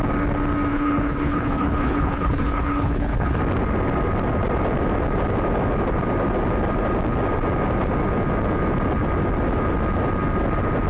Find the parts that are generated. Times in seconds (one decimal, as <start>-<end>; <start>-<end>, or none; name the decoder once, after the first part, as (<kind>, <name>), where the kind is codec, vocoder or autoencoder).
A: 0.7-3.4 (codec, HILCodec)